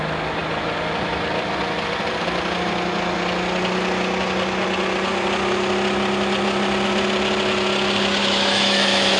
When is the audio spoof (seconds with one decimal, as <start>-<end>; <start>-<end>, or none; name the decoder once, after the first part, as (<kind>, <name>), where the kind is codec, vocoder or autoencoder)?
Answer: 8.2-9.2 (autoencoder, DAC-VAE)